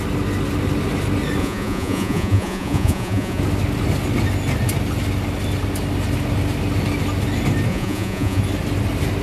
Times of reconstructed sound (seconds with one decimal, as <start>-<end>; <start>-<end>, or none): 1.4-3.4; 7.7-8.4